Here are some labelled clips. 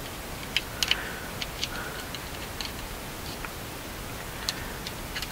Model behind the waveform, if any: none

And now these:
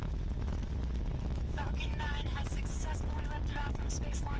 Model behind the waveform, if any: autoencoder, DAC-VAE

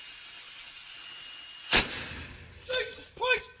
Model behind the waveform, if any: none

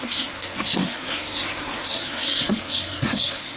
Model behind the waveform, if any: codec, SNAC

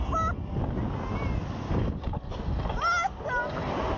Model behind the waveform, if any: none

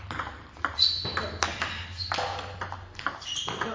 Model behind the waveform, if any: none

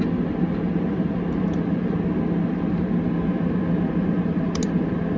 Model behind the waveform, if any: none